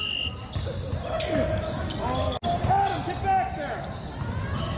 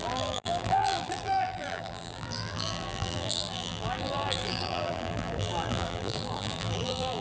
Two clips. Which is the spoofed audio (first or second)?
second